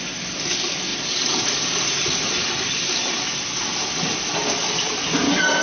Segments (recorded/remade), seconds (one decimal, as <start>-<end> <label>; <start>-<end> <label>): 0.0-5.6 recorded